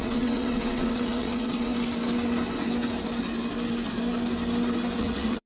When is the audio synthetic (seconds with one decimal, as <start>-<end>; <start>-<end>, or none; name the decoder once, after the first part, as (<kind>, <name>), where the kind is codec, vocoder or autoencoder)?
0.0-1.7 (vocoder, WaveNeXt); 5.0-5.5